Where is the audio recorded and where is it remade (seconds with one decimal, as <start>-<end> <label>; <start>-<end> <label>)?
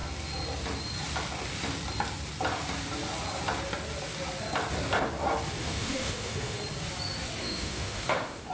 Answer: 0.0-5.6 recorded; 5.6-6.6 remade; 6.6-7.4 recorded; 7.4-8.5 remade